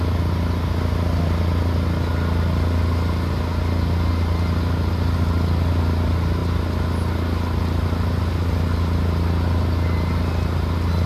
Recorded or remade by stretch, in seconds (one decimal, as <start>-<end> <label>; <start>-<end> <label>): 0.0-11.1 recorded